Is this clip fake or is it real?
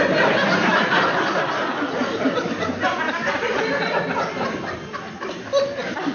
real